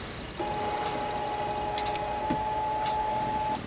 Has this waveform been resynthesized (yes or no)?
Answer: no